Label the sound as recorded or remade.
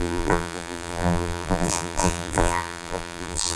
remade